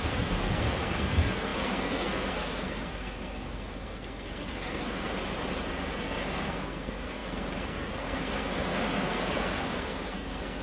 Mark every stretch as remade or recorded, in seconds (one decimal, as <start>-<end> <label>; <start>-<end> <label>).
0.0-5.1 remade; 5.1-5.7 recorded; 5.7-10.6 remade